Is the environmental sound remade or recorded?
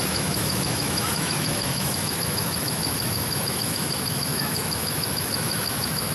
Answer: remade